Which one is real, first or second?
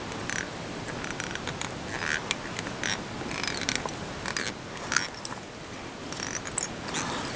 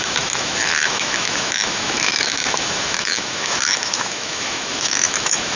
first